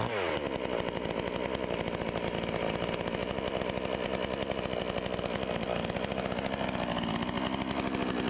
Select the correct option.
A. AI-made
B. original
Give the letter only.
B